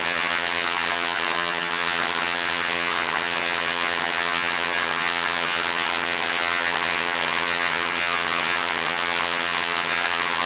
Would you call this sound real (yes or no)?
no